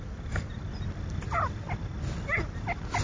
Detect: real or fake real